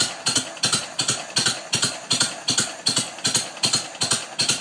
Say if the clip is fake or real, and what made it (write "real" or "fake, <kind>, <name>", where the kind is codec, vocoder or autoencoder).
real